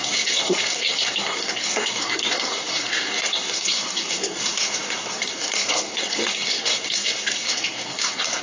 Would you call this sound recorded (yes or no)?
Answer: no